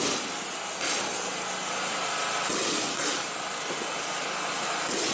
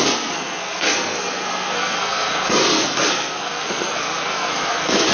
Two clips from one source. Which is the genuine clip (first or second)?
first